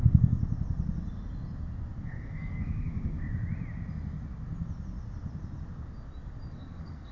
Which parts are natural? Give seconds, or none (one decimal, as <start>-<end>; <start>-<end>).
0.4-2.0; 3.2-6.5